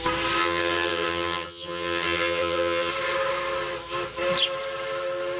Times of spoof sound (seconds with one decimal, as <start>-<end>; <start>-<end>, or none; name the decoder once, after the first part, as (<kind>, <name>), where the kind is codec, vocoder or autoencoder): 0.4-2.9 (vocoder, HiFi-GAN)